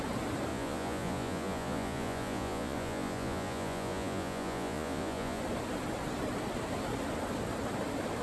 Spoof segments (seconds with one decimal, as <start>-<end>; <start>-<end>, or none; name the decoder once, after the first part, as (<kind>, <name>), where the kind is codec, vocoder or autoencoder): 0.5-5.4 (vocoder, Vocos)